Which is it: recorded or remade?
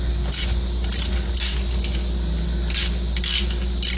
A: recorded